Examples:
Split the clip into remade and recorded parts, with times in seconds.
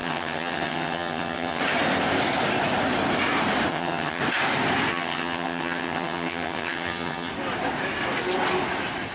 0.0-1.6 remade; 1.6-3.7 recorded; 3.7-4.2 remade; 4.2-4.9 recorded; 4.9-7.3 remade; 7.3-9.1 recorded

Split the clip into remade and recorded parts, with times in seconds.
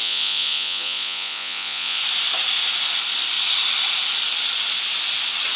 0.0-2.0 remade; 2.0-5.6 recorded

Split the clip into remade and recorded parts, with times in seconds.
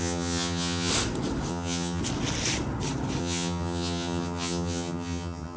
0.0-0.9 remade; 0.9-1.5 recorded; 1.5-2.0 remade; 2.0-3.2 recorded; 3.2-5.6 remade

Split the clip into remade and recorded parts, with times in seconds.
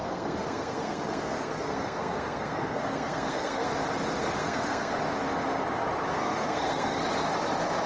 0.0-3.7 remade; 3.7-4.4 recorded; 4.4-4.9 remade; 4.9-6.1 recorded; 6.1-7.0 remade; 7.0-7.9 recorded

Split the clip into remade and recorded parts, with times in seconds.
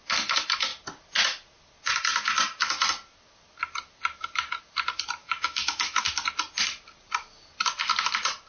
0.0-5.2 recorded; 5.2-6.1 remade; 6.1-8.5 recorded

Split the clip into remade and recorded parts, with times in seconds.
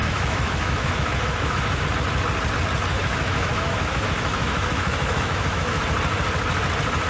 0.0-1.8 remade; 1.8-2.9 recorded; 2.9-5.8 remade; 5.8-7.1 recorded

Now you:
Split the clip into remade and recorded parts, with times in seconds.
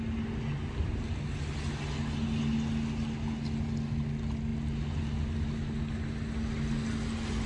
0.0-7.5 recorded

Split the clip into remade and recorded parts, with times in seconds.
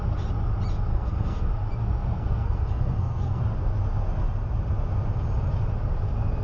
0.0-0.9 recorded; 0.9-1.5 remade; 1.5-2.0 recorded; 2.0-3.4 remade; 3.4-6.4 recorded